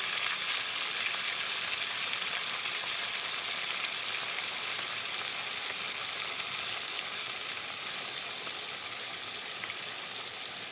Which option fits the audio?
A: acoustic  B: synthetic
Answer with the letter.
A